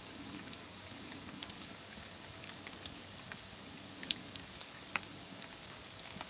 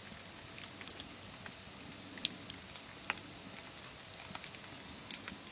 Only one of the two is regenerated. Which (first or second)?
first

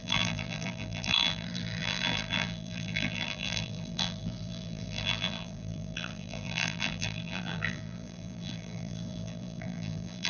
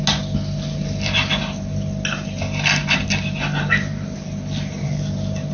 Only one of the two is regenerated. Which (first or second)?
first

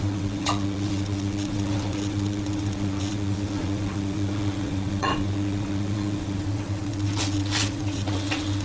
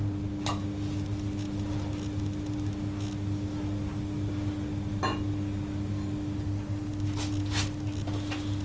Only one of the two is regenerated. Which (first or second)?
first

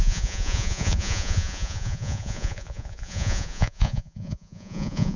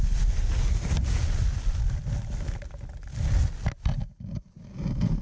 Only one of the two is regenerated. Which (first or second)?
first